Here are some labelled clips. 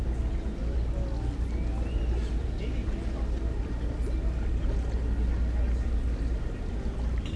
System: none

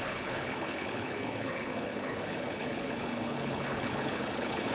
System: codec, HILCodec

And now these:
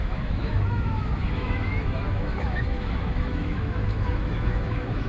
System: autoencoder, DAC-VAE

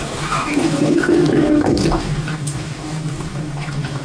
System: codec, DAC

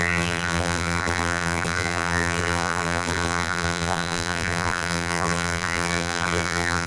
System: vocoder, BigVGAN v2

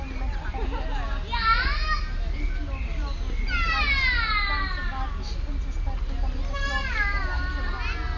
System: none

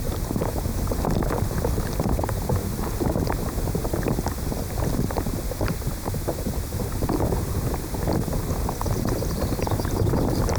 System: vocoder, BigVGAN v2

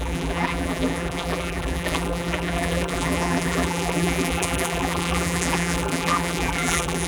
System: vocoder, BigVGAN v2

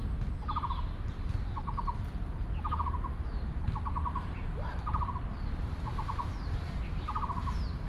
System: none